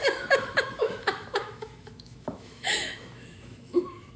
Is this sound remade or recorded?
remade